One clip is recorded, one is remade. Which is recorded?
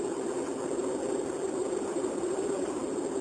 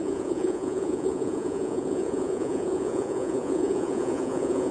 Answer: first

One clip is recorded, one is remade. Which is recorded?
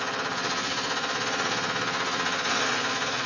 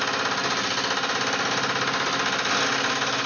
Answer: second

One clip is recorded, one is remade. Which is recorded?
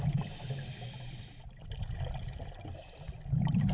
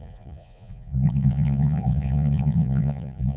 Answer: first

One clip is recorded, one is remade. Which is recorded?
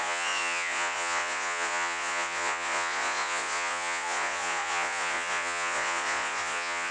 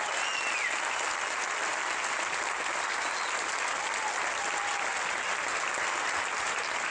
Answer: second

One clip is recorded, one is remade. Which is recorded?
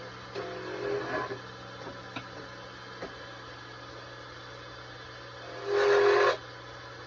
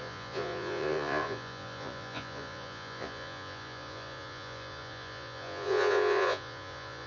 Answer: first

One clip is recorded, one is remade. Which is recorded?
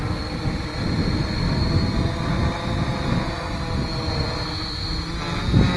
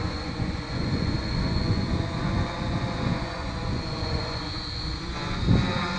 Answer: first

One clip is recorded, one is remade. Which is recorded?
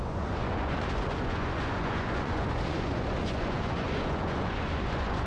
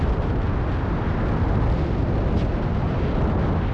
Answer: second